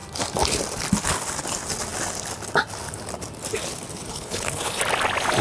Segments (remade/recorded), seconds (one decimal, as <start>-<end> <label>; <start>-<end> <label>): 0.0-4.1 recorded; 4.1-4.8 remade; 4.8-5.4 recorded